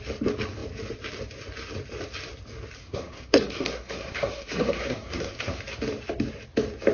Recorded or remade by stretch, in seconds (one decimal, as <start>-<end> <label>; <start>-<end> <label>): 0.0-2.8 recorded; 2.8-5.6 remade; 5.6-6.9 recorded